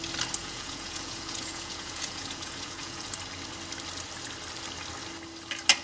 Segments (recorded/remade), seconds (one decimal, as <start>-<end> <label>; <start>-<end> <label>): 0.0-0.4 recorded; 0.4-3.1 remade; 3.1-5.8 recorded